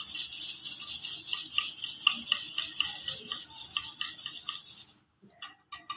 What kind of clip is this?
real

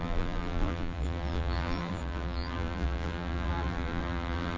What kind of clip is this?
fake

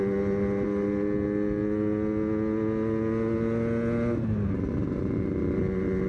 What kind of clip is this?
real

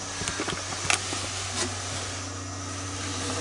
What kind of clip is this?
real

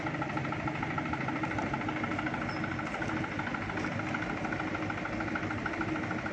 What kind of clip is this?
real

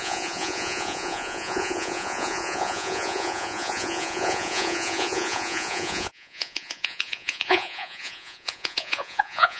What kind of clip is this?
fake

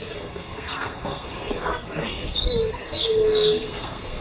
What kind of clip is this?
fake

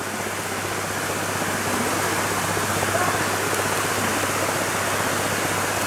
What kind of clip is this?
real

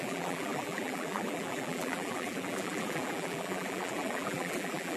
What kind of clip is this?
fake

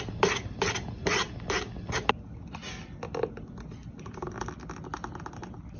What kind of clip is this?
real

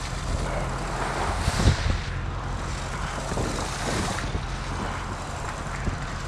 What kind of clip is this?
real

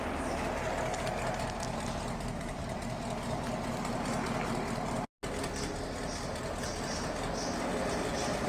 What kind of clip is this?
real